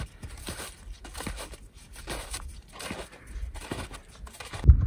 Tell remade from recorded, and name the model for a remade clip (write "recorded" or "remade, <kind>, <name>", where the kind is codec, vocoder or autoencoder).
recorded